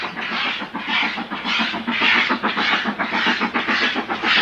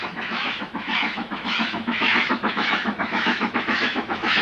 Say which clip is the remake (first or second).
second